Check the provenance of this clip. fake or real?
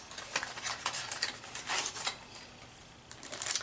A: real